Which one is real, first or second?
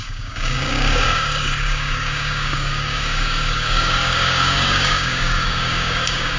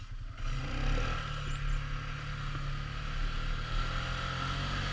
second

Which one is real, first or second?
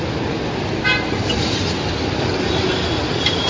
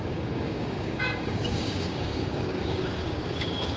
first